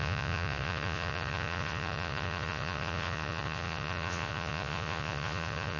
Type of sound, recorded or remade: remade